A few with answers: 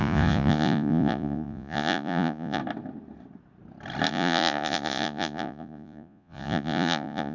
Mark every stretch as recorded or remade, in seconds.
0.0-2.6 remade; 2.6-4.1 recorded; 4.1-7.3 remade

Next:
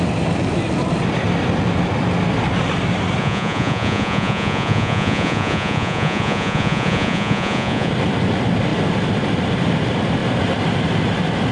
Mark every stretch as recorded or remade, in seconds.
0.0-3.2 recorded; 3.2-7.9 remade; 7.9-11.5 recorded

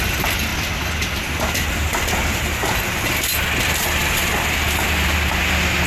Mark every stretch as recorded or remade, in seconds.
0.0-5.9 recorded

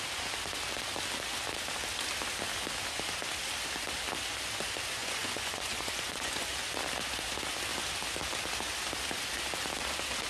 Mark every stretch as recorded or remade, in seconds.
0.0-5.0 recorded; 5.0-6.5 remade; 6.5-10.3 recorded

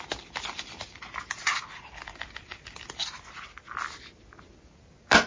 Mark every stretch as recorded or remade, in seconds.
0.0-5.3 recorded